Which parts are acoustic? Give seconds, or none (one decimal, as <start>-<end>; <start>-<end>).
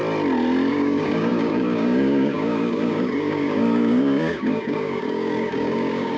0.0-0.7